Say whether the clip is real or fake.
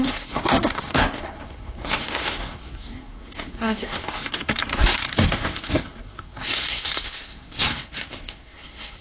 fake